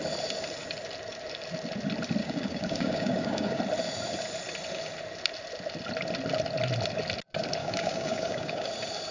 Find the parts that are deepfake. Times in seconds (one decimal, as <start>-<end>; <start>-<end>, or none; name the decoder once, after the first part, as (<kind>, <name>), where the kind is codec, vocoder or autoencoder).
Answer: 2.2-3.6 (codec, DAC); 7.6-8.7